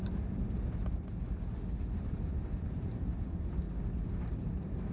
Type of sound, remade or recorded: recorded